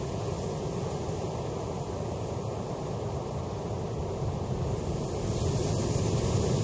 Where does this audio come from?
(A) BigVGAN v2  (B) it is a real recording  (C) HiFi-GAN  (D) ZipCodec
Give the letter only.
B